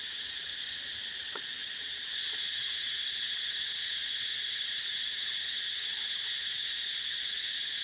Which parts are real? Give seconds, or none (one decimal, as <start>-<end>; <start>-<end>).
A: 0.5-1.0